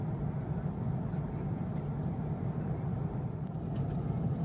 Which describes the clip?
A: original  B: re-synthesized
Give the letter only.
A